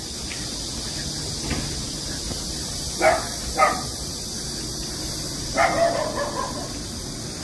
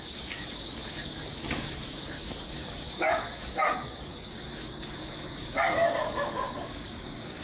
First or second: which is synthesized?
second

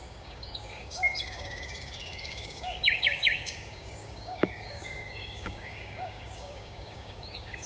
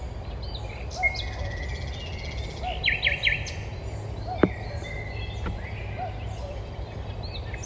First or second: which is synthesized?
first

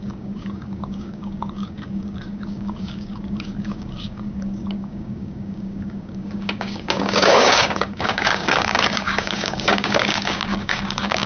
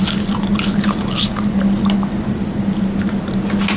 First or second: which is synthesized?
first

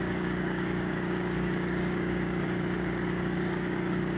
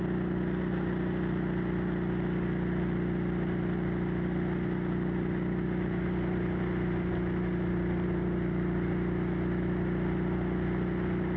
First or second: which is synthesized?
first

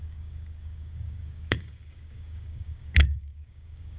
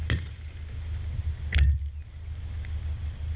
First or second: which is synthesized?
first